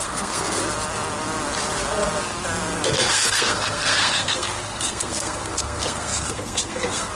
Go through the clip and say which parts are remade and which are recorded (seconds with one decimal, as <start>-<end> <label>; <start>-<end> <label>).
0.0-0.6 remade; 0.6-3.1 recorded; 3.1-7.1 remade